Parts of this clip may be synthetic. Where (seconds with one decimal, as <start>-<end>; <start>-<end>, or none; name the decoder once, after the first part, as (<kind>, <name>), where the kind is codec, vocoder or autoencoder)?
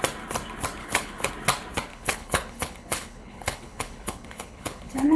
0.8-1.3 (codec, HILCodec); 1.9-5.2